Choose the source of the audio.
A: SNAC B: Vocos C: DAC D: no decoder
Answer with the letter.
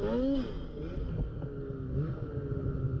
D